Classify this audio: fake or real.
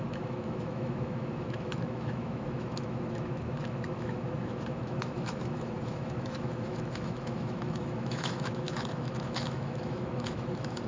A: fake